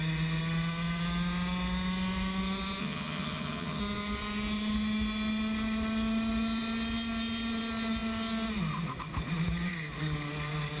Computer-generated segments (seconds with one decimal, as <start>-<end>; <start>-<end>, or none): 2.8-3.8